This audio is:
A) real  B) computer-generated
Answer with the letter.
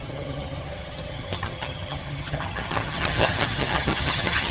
B